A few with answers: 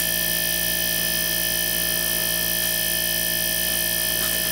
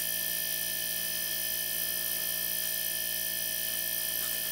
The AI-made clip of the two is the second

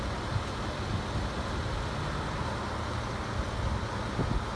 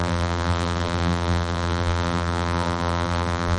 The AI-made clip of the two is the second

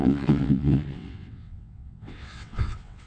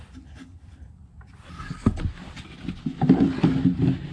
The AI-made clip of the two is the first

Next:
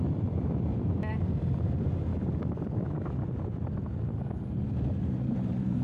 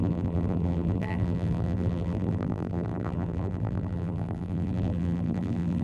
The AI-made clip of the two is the second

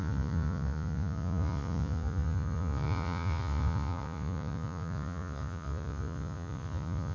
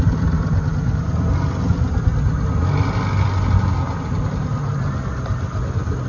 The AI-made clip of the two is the first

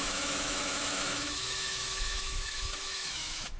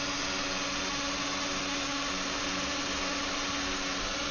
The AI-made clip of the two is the first